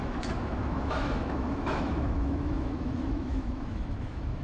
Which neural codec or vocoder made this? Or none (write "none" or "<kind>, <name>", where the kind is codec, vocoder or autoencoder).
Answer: autoencoder, DAC-VAE